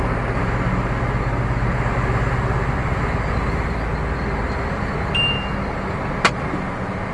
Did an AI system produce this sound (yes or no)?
no